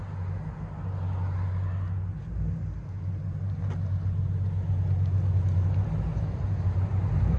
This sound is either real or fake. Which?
real